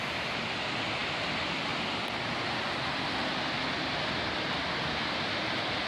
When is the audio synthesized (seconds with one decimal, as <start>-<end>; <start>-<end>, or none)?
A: none